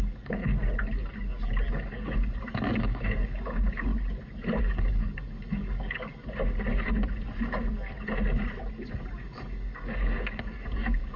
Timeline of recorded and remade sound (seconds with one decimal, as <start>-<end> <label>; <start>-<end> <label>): 0.0-0.5 remade; 0.5-1.7 recorded; 1.7-3.9 remade; 3.9-4.6 recorded; 4.6-6.1 remade; 6.1-8.7 recorded; 8.7-11.2 remade